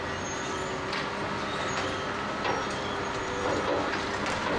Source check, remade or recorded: recorded